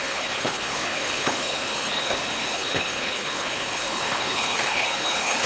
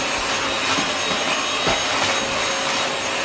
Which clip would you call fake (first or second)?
first